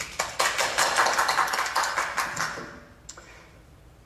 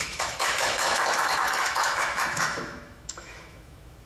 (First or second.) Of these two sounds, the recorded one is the first